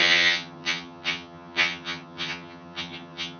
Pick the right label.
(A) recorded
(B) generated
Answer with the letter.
B